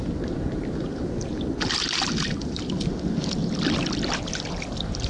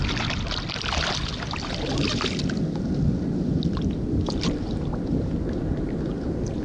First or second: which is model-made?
first